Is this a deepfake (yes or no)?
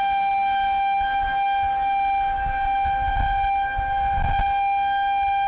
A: no